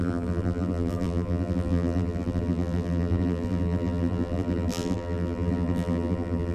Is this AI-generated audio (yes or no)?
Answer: yes